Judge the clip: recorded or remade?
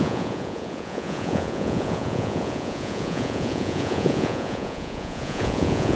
remade